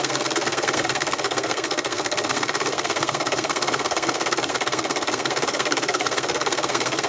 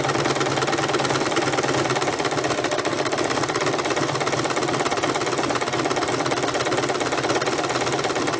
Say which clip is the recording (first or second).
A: second